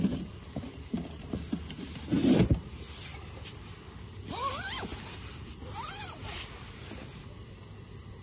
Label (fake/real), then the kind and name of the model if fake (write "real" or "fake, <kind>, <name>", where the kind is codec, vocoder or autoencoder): real